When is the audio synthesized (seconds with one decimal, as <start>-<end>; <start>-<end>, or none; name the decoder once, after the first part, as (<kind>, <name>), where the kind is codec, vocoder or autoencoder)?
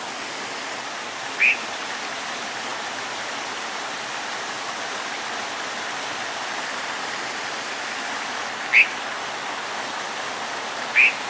none